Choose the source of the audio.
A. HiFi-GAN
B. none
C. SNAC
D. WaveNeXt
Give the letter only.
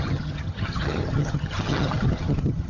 A